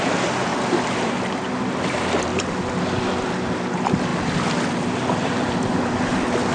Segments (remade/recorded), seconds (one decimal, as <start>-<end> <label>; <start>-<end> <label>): 0.0-6.5 remade